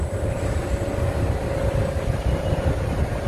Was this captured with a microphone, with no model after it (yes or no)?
yes